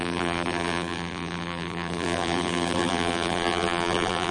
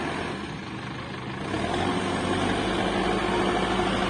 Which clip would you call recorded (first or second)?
second